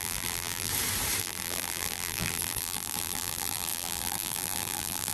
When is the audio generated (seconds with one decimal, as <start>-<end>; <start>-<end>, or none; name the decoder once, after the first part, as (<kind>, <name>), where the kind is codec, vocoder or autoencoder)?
0.0-0.7 (vocoder, BigVGAN v2); 1.2-5.1